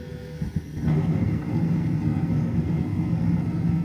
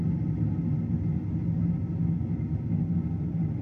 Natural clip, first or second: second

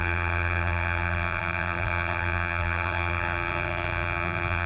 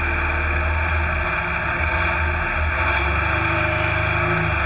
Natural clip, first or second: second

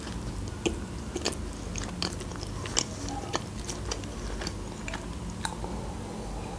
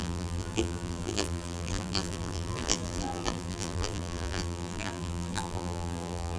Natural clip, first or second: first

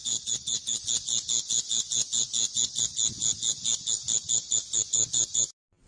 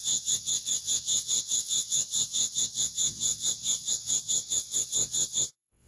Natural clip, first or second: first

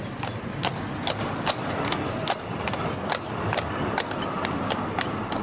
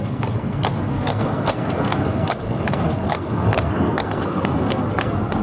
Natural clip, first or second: first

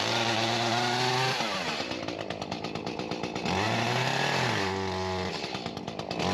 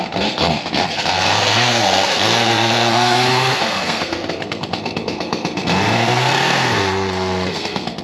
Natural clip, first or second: first